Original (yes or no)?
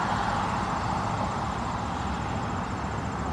yes